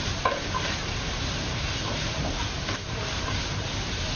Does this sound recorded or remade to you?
remade